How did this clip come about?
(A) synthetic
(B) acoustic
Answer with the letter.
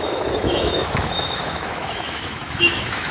A